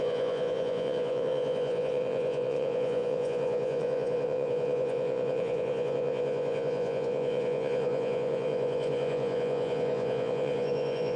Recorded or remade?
remade